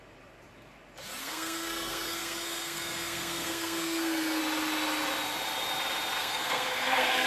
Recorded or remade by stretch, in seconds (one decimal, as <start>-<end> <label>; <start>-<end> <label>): 0.0-1.2 recorded; 1.2-4.4 remade; 4.4-6.2 recorded; 6.2-7.3 remade